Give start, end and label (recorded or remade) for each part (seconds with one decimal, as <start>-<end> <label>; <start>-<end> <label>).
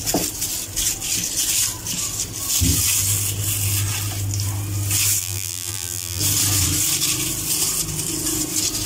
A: 0.0-5.2 recorded; 5.2-6.2 remade; 6.2-8.9 recorded